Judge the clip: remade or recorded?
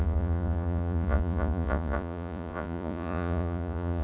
remade